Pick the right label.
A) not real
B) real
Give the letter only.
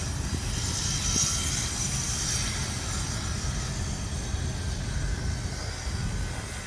B